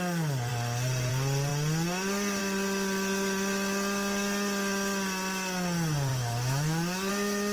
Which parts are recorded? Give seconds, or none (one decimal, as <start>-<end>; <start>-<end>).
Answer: 0.0-6.1; 7.1-7.5